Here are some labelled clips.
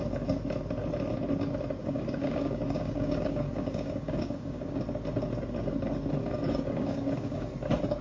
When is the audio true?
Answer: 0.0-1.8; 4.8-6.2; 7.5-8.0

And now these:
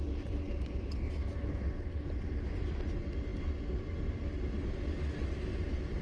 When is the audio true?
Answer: 0.0-6.0

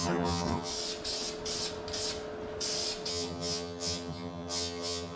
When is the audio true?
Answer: 0.7-3.1

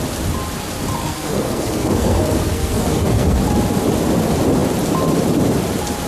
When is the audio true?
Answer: 0.0-1.0; 3.4-6.1